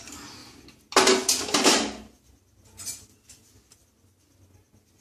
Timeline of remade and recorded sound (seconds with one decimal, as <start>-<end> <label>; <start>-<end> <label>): 0.0-5.0 recorded